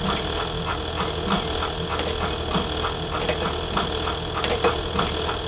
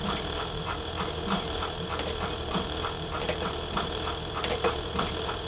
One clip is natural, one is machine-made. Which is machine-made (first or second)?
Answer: second